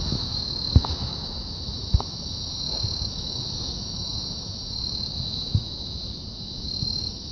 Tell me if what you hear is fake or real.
fake